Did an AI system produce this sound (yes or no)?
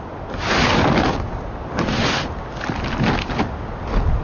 no